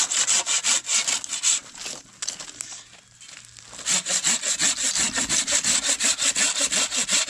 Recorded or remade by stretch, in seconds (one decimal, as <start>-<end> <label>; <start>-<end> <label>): 0.0-7.3 recorded